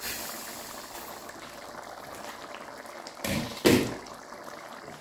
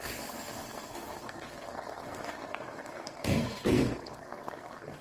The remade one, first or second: second